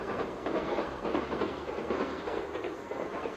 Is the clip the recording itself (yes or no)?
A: no